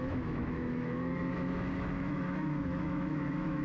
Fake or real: fake